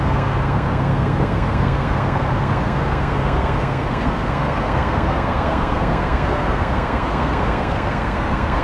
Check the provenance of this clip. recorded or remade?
remade